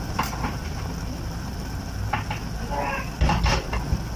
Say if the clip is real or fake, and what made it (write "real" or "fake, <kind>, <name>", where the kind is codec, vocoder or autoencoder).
real